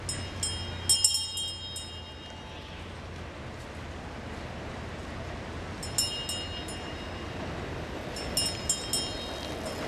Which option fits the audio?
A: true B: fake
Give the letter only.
A